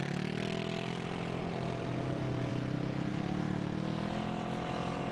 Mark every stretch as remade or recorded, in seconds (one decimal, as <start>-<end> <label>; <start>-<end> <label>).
0.0-5.1 recorded